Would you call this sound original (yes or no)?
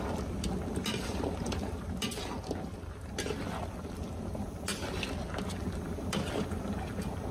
yes